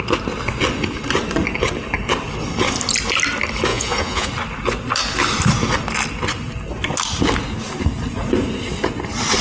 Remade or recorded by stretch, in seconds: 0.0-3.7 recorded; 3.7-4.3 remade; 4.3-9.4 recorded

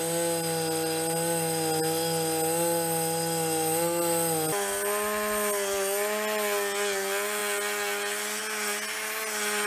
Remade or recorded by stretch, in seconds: 0.0-9.7 recorded

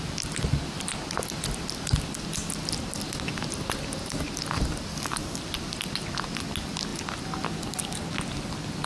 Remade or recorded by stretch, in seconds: 0.0-4.9 recorded; 4.9-5.4 remade; 5.4-8.8 recorded

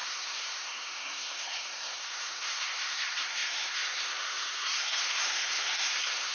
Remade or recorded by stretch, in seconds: 0.0-6.3 remade

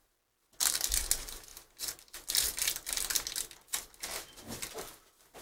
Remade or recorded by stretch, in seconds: 0.0-5.4 recorded

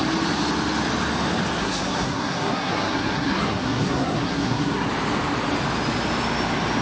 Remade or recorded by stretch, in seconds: 0.0-1.6 recorded; 1.6-4.9 remade; 4.9-6.8 recorded